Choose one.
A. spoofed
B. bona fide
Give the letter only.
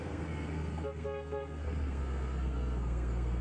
A